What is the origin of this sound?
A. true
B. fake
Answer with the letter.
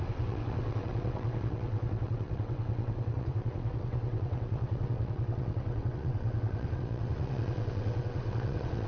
B